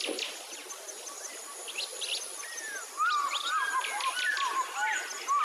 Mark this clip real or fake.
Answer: real